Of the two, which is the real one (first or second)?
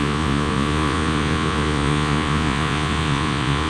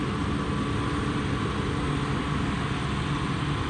second